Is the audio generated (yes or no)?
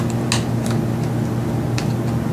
no